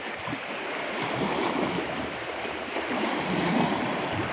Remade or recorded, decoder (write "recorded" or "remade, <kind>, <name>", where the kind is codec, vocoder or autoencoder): recorded